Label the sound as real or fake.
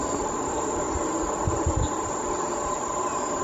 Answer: real